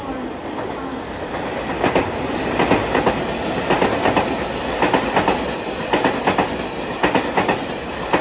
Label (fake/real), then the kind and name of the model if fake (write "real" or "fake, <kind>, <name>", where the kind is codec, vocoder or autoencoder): real